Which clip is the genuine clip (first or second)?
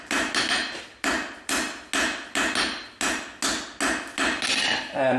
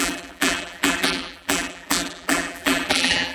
first